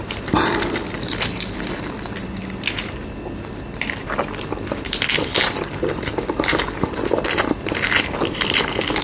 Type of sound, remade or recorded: recorded